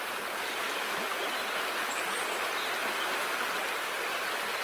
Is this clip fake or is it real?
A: real